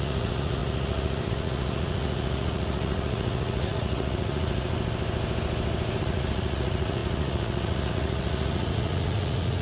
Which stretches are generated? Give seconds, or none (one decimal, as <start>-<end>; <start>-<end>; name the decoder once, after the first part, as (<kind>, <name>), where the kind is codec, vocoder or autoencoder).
0.0-4.7 (vocoder, Vocos); 6.0-9.6